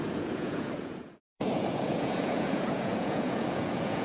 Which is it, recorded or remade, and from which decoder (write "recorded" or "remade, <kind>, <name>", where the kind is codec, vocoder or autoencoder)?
remade, vocoder, Vocos